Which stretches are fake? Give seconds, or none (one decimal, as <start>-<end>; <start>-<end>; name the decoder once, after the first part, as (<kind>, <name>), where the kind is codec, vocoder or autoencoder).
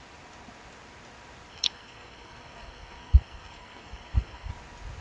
1.5-4.5 (codec, SNAC)